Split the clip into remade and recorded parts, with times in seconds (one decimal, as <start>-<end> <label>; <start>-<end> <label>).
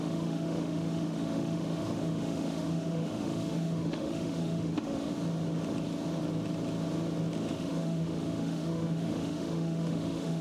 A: 0.0-5.1 remade; 5.1-7.5 recorded; 7.5-10.4 remade